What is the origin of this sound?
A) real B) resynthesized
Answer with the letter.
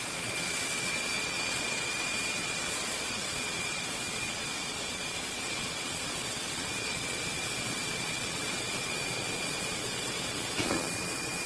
B